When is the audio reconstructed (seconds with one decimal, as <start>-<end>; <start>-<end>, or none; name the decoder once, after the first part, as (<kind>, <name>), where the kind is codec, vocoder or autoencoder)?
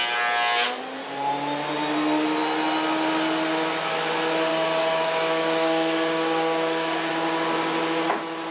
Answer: 4.5-7.1 (codec, DAC)